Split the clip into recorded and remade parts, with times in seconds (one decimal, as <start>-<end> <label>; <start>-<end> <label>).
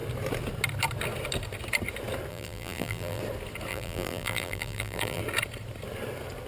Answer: 0.0-2.3 recorded; 2.3-3.2 remade; 3.2-3.7 recorded; 3.7-5.2 remade; 5.2-6.5 recorded